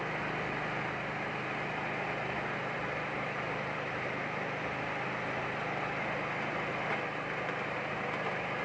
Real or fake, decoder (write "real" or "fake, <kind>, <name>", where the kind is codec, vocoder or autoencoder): real